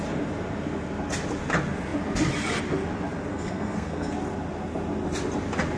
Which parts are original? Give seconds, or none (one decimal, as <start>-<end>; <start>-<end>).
0.0-3.3; 4.1-5.8